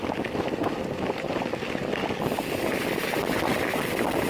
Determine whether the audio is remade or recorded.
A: recorded